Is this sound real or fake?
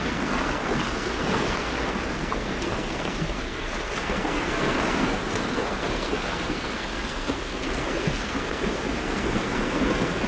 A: fake